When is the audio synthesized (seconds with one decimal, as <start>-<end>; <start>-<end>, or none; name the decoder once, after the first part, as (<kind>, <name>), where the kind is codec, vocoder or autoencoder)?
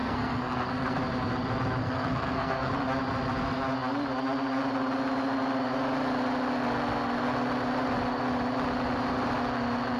0.0-1.0 (codec, SNAC); 1.8-2.7